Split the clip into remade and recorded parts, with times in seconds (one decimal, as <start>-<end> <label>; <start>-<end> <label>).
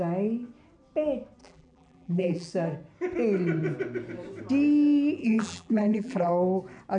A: 0.0-1.4 recorded; 1.4-2.5 remade; 2.5-5.2 recorded; 5.2-6.3 remade; 6.3-7.0 recorded